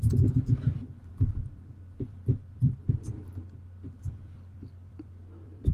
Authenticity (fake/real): fake